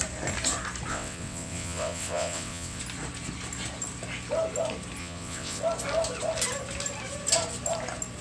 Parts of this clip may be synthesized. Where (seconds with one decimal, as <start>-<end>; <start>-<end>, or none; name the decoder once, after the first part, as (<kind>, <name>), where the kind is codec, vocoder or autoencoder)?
0.9-2.8 (vocoder, WaveNeXt); 5.0-5.6